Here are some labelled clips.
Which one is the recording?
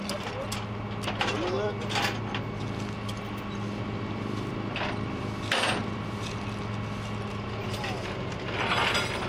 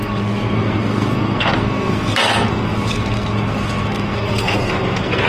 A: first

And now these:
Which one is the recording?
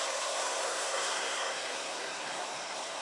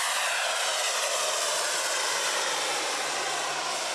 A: second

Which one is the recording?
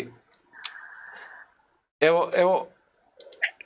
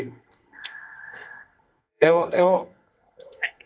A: first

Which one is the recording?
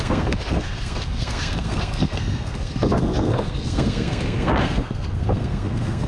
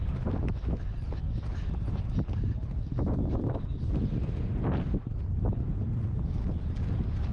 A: second